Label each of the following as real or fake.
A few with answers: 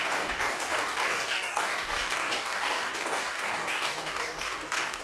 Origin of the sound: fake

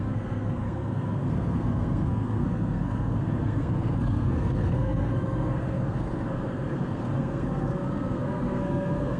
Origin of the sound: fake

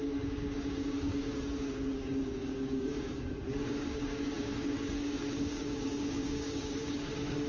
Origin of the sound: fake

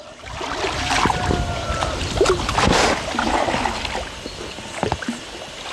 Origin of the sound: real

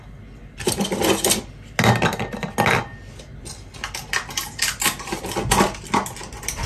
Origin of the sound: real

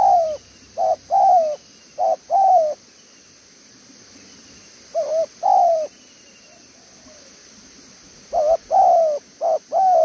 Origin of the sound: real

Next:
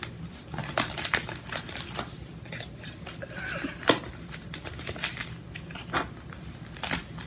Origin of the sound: real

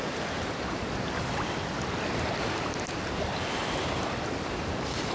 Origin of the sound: real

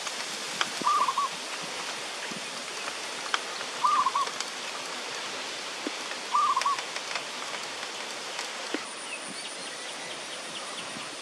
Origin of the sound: real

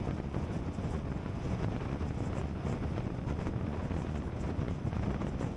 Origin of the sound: fake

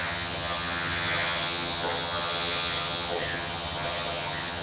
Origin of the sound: fake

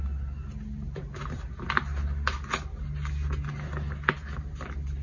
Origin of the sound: real